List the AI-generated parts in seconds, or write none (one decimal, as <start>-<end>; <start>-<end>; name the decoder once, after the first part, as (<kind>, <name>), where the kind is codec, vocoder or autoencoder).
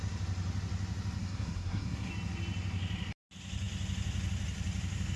1.2-2.1 (codec, SNAC)